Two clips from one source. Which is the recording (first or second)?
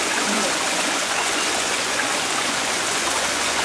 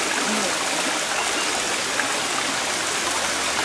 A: second